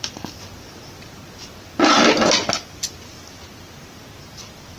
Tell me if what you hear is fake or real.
real